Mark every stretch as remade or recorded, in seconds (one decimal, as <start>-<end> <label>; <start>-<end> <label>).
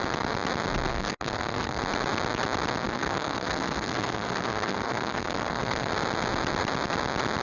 0.0-0.9 recorded; 0.9-1.8 remade; 1.8-2.8 recorded; 2.8-5.9 remade; 5.9-7.4 recorded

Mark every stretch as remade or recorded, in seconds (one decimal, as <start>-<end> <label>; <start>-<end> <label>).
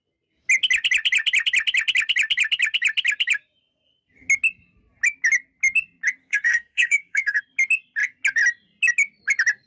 0.0-6.2 recorded; 6.2-7.4 remade; 7.4-9.7 recorded